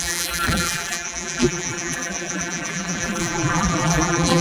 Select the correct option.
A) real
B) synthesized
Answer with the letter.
B